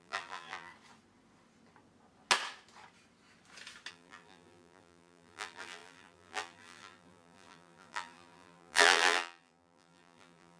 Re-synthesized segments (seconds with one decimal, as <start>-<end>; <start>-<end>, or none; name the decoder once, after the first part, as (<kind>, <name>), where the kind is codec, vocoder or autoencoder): 0.0-0.7 (vocoder, BigVGAN v2); 3.9-10.6